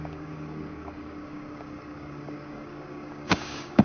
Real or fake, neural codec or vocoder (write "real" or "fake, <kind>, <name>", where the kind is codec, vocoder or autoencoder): fake, codec, DAC